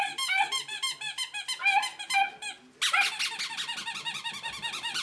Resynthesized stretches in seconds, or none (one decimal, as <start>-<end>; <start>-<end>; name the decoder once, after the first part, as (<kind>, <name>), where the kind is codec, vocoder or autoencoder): none